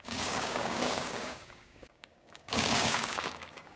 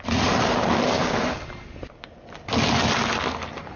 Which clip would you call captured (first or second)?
second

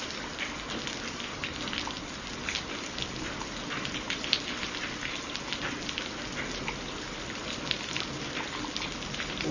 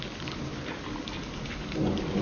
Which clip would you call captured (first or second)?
first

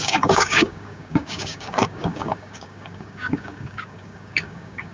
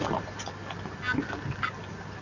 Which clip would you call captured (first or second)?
second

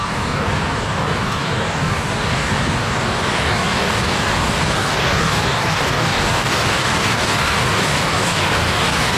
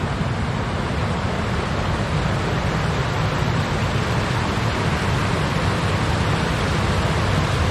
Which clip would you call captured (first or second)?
second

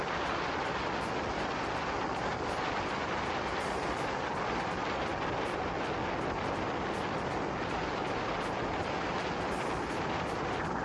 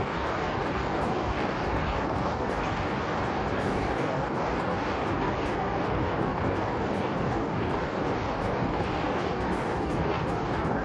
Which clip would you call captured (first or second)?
first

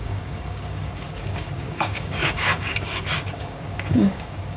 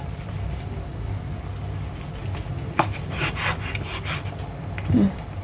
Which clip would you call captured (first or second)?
second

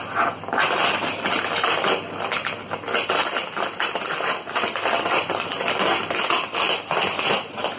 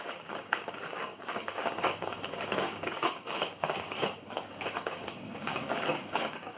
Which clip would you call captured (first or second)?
first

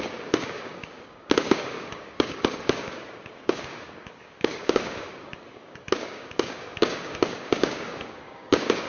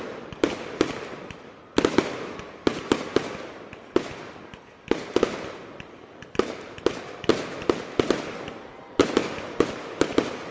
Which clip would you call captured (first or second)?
second